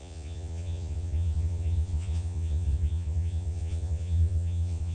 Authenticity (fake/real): fake